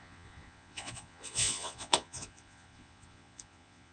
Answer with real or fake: fake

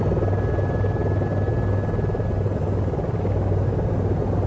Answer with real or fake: real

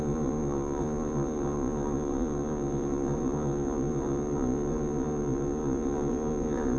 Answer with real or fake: fake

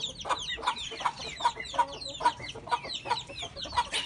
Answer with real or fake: real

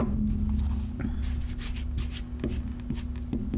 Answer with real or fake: real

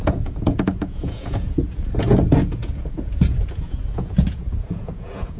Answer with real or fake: fake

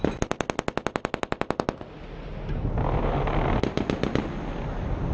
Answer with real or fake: real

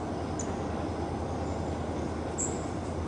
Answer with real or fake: real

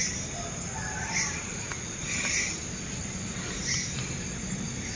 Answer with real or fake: real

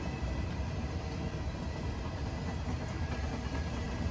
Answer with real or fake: real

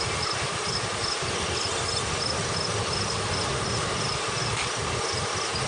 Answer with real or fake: real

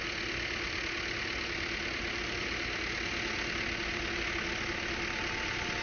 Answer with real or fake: real